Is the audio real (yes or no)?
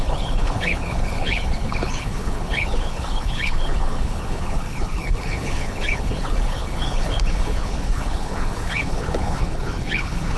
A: no